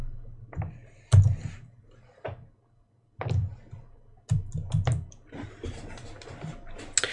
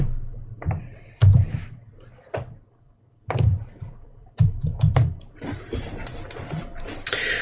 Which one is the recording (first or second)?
first